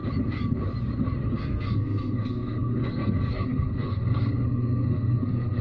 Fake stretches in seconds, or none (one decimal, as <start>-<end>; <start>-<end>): 1.3-5.6